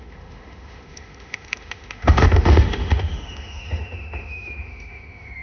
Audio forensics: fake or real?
fake